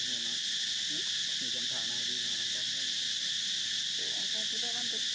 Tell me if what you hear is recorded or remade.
recorded